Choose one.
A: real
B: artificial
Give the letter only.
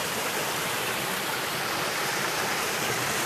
B